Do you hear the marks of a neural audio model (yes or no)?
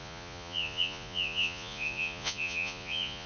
yes